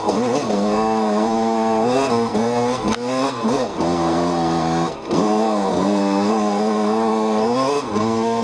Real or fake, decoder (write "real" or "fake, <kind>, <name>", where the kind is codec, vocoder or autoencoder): fake, codec, SNAC